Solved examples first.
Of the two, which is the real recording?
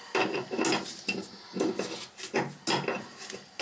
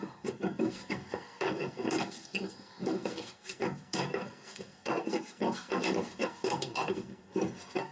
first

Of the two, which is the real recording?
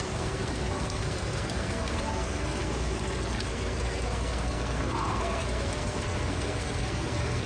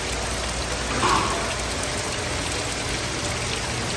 second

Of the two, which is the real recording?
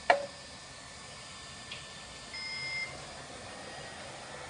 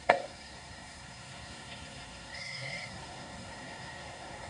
first